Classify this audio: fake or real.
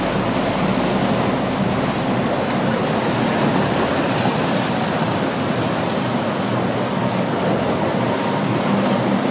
real